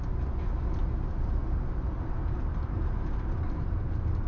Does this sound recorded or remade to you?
recorded